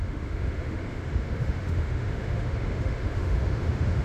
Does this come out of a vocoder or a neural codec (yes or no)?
yes